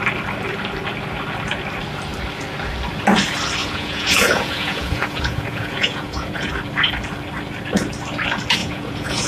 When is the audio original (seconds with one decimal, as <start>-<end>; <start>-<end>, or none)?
0.0-3.6; 6.5-8.6